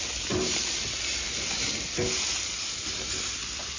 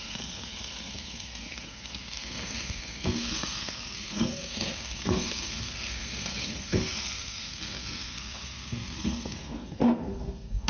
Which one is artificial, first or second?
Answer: second